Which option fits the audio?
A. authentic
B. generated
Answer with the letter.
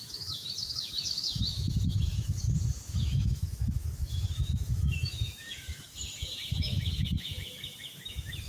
B